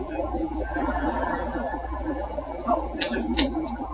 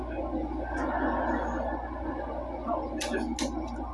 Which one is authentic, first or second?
second